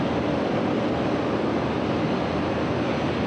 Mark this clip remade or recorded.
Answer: recorded